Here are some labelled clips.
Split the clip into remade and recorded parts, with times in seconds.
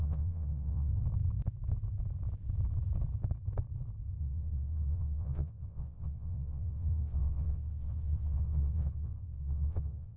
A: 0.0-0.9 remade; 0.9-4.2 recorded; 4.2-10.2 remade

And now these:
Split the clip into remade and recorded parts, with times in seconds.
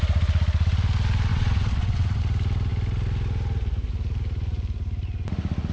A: 0.0-1.3 recorded; 1.3-2.2 remade; 2.2-5.7 recorded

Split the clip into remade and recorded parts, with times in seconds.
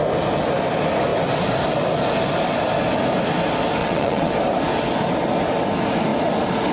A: 0.0-3.8 recorded; 3.8-4.3 remade; 4.3-6.7 recorded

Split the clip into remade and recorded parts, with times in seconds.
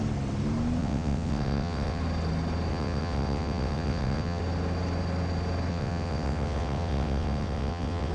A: 0.0-0.8 recorded; 0.8-2.0 remade; 2.0-2.7 recorded; 2.7-4.4 remade; 4.4-5.7 recorded; 5.7-8.1 remade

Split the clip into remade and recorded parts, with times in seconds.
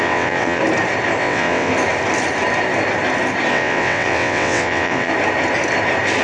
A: 0.0-0.6 remade; 0.6-1.2 recorded; 1.2-1.7 remade; 1.7-3.5 recorded; 3.5-5.1 remade; 5.1-6.2 recorded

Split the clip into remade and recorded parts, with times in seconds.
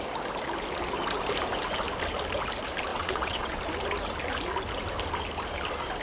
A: 0.0-2.9 recorded; 2.9-3.6 remade; 3.6-6.0 recorded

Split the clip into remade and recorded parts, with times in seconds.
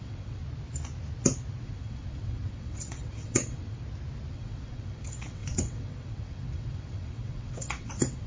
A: 0.0-0.4 remade; 0.4-1.6 recorded; 1.6-3.8 remade; 3.8-4.3 recorded; 4.3-8.3 remade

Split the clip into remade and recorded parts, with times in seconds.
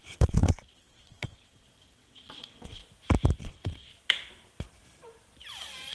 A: 0.0-2.8 remade; 2.8-3.4 recorded; 3.4-3.9 remade; 3.9-5.9 recorded